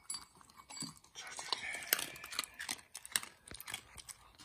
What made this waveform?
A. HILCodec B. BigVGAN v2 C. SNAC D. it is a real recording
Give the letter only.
D